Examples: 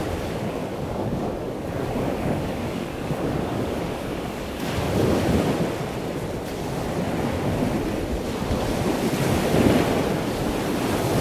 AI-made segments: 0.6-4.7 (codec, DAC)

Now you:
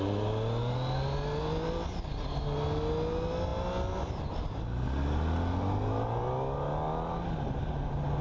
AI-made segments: none

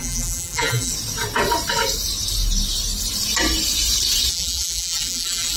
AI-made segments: 0.0-0.9 (vocoder, BigVGAN v2); 4.3-5.6

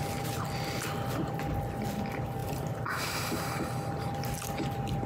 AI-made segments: 2.4-3.5 (vocoder, BigVGAN v2)

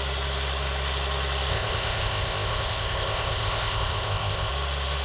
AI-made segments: 1.5-4.5 (codec, ZipCodec)

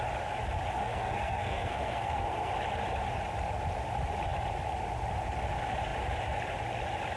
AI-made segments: 0.8-2.5 (codec, SNAC)

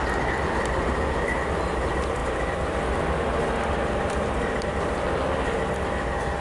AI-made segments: none

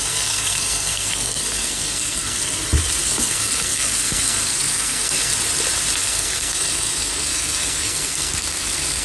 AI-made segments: 0.0-2.4 (codec, SNAC); 3.0-5.3; 6.0-9.0